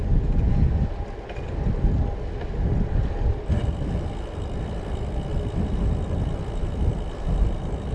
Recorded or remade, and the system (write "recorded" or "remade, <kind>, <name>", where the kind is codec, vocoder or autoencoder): recorded